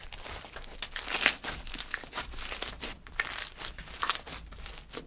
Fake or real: real